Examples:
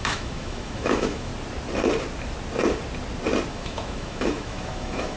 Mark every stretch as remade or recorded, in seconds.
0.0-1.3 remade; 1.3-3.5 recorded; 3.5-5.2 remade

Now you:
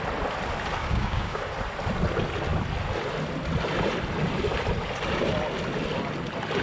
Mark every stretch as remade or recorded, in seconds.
0.0-0.8 recorded; 0.8-1.4 remade; 1.4-6.6 recorded

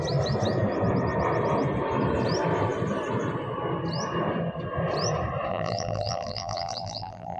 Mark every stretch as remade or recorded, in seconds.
0.0-5.5 recorded; 5.5-7.4 remade

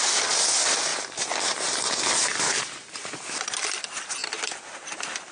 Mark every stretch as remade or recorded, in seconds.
0.0-5.3 recorded